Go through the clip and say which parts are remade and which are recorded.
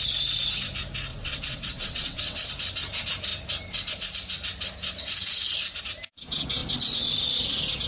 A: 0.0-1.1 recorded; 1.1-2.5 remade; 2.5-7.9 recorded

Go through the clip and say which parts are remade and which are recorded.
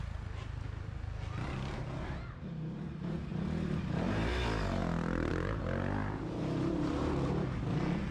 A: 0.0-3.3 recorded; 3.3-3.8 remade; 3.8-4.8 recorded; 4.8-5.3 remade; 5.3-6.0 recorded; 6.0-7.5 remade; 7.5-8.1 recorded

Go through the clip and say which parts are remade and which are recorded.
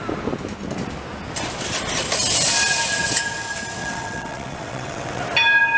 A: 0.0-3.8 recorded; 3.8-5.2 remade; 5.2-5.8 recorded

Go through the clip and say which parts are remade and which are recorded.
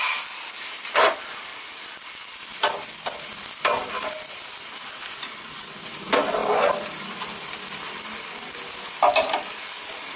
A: 0.0-10.2 recorded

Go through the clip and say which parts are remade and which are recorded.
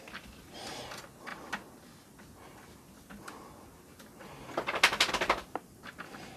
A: 0.0-6.4 recorded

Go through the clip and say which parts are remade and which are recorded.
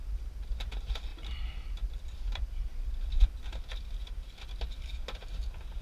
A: 0.0-1.1 recorded; 1.1-4.6 remade; 4.6-5.8 recorded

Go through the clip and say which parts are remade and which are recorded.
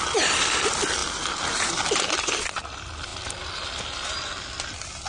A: 0.0-5.1 recorded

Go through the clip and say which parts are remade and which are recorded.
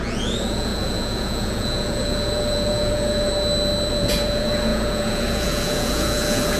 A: 0.0-3.3 remade; 3.3-3.9 recorded; 3.9-6.6 remade